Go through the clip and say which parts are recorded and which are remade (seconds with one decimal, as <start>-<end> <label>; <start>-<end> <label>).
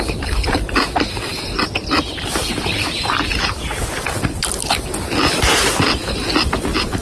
0.0-7.0 recorded